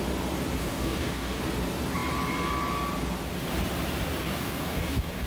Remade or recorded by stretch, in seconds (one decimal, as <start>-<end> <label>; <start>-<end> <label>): 0.0-0.6 recorded; 0.6-1.4 remade; 1.4-4.2 recorded; 4.2-5.3 remade